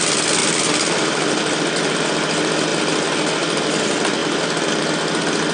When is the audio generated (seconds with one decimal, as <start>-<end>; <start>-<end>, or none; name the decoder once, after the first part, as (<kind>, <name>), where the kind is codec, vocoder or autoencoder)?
0.4-2.0 (vocoder, BigVGAN v2); 4.2-4.7